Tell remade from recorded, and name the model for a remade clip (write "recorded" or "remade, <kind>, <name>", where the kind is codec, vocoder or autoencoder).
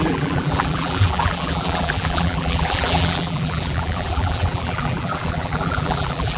remade, vocoder, BigVGAN v2